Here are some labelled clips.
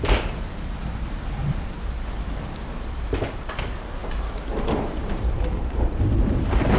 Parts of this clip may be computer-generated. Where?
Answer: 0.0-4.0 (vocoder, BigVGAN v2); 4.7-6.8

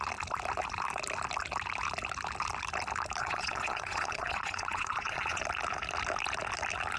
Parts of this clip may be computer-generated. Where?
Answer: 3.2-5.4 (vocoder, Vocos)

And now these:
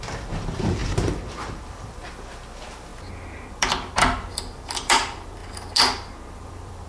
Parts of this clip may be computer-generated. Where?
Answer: 0.0-2.9 (vocoder, BigVGAN v2); 3.5-5.4; 6.3-6.9

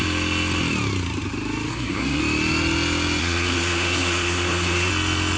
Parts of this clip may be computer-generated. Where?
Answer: 1.7-2.2 (codec, SNAC); 3.2-4.9

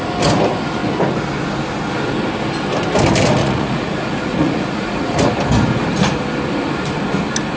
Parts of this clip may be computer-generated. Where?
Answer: 3.4-5.2 (vocoder, Vocos)

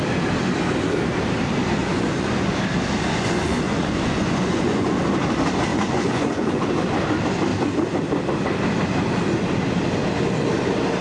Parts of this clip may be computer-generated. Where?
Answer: 1.8-2.6 (vocoder, Vocos); 3.1-4.9; 5.7-6.6

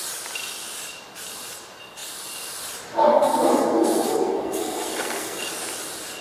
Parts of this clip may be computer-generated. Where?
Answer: 3.1-5.4 (codec, SNAC)

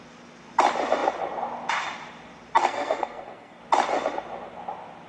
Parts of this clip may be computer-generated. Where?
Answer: 2.6-3.6 (codec, SNAC)